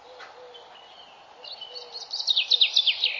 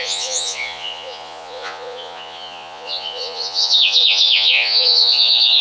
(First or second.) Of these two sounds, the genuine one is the first